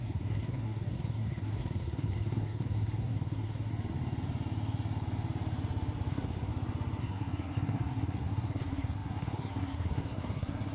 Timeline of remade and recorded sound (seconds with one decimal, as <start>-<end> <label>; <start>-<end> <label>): 0.0-3.7 remade; 3.7-6.1 recorded; 6.1-6.5 remade; 6.5-7.0 recorded; 7.0-10.7 remade